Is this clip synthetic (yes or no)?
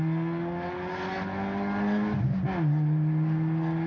no